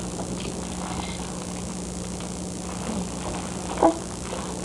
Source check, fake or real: real